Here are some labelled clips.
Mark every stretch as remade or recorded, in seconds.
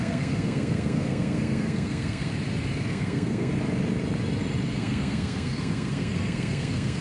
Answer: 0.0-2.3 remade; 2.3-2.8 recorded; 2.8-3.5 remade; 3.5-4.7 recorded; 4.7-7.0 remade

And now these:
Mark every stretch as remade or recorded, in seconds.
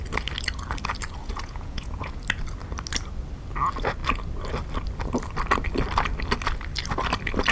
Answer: 0.0-1.2 recorded; 1.2-2.1 remade; 2.1-7.5 recorded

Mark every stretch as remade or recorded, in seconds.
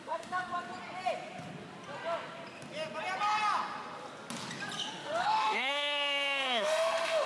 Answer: 0.0-0.5 remade; 0.5-4.9 recorded; 4.9-7.3 remade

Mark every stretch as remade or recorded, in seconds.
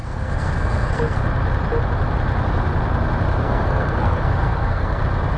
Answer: 0.0-1.2 remade; 1.2-3.4 recorded; 3.4-5.0 remade; 5.0-5.4 recorded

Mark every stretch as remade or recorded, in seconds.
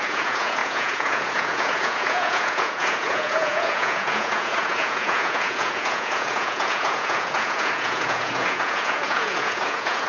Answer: 0.0-10.1 remade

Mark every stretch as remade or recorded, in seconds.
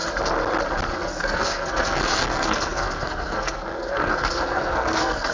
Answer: 0.0-0.9 recorded; 0.9-5.3 remade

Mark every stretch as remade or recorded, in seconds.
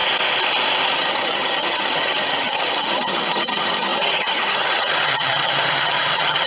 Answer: 0.0-0.9 recorded; 0.9-6.5 remade